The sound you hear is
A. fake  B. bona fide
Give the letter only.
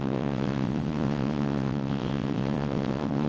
A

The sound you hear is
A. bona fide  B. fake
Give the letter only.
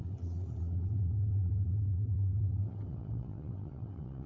B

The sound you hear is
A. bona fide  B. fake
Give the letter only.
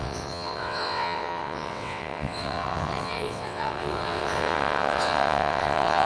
B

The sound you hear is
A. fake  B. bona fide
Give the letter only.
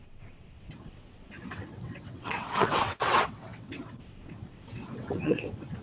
A